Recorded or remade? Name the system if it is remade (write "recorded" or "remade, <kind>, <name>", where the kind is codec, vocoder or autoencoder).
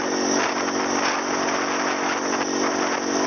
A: recorded